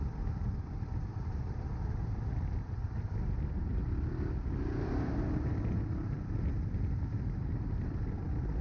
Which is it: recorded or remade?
recorded